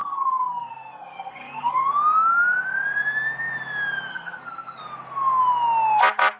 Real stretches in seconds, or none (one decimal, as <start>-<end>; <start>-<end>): 1.9-4.1; 4.8-6.4